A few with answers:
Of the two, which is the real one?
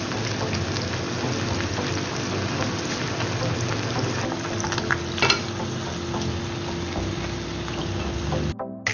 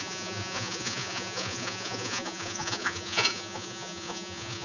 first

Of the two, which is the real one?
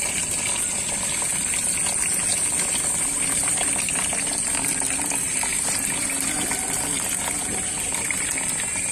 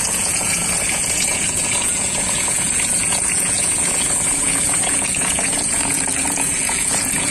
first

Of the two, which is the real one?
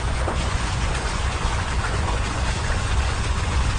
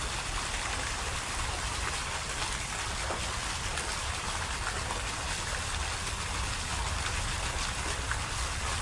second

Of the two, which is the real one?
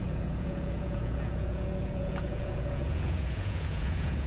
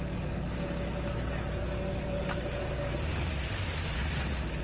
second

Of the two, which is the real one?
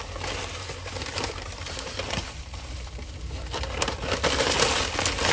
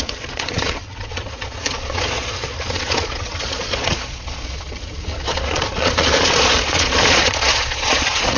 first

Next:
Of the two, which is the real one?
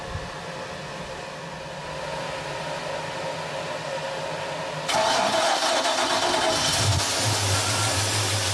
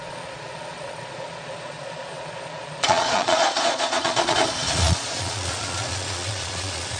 first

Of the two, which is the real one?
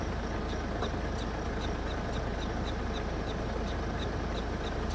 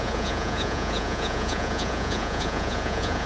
first